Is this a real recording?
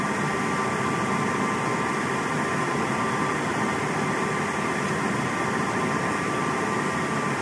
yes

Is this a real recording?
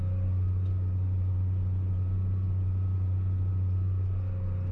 yes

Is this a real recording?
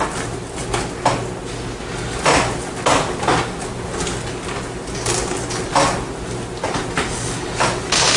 yes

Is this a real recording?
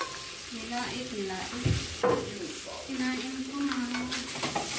yes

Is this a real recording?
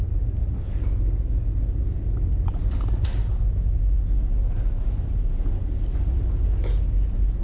yes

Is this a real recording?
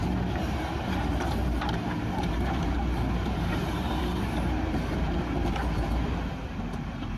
no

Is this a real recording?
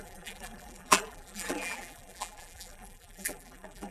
no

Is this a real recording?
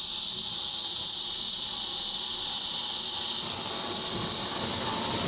yes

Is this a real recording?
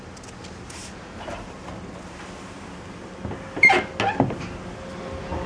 yes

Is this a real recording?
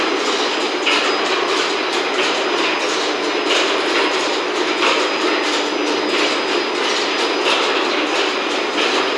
yes